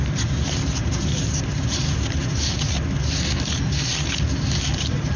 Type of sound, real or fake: real